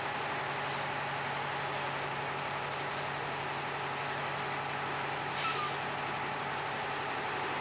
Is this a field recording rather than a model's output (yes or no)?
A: yes